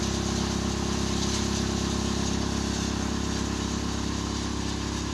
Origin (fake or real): real